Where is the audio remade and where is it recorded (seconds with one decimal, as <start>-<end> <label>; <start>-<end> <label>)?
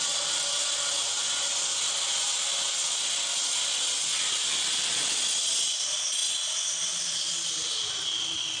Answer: 0.0-8.6 recorded